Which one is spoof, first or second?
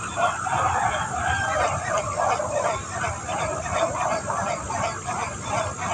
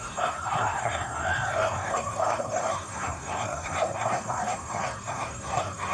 second